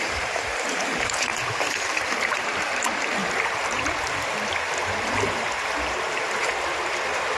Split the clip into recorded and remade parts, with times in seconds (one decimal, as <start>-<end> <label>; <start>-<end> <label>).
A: 0.0-1.3 remade; 1.3-2.3 recorded; 2.3-7.4 remade